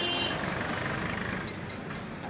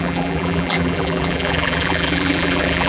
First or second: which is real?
first